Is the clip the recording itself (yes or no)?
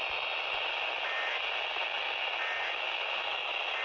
yes